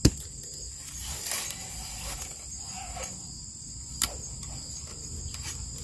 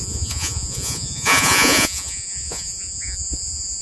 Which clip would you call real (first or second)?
first